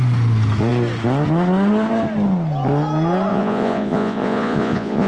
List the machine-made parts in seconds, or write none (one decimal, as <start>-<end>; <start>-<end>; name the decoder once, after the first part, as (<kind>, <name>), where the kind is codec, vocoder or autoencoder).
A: 3.3-5.1 (vocoder, Vocos)